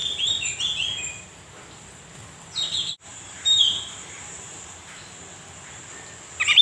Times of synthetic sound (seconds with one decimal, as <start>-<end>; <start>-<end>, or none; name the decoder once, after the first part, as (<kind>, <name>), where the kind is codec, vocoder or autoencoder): 3.1-5.0 (vocoder, BigVGAN v2)